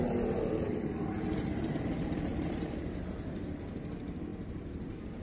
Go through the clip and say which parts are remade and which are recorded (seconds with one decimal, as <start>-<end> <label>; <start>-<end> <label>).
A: 0.0-4.3 recorded; 4.3-5.2 remade